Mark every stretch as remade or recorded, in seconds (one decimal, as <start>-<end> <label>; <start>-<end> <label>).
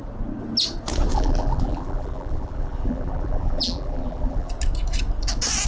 0.0-1.1 recorded; 1.1-4.5 remade; 4.5-5.7 recorded